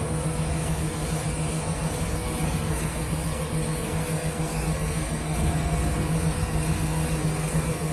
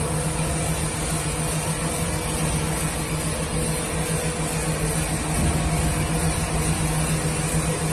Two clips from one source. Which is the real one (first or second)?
second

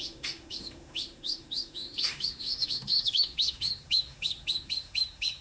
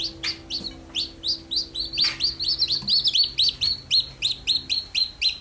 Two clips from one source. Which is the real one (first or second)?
second